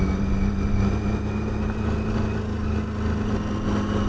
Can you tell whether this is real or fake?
real